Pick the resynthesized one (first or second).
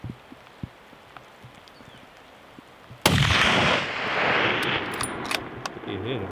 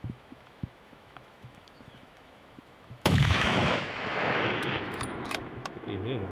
second